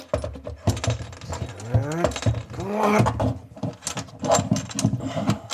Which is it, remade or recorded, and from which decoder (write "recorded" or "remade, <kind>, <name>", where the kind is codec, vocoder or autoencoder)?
recorded